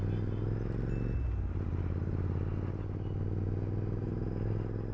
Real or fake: real